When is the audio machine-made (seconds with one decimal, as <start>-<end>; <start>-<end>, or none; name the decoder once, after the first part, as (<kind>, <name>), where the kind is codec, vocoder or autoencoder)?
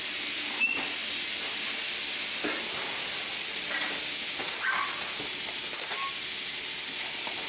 none